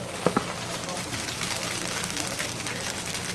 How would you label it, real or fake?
real